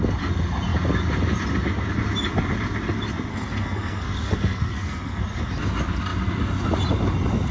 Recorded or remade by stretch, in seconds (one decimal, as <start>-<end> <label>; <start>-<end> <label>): 0.0-3.3 recorded; 3.3-5.2 remade; 5.2-7.5 recorded